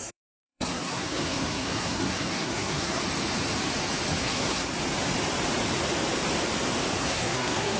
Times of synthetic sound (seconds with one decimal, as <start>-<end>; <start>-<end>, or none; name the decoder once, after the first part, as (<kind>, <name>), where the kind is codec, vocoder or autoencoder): 0.0-3.0 (codec, SNAC); 4.2-4.7; 7.0-7.8